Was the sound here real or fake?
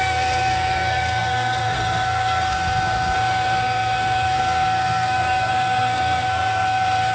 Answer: fake